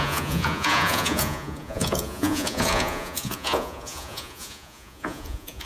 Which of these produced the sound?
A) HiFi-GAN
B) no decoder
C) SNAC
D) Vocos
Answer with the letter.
D